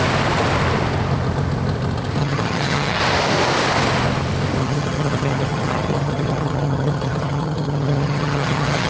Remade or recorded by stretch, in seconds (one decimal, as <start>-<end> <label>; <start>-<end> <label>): 0.0-2.2 recorded; 2.2-3.0 remade; 3.0-4.6 recorded; 4.6-8.9 remade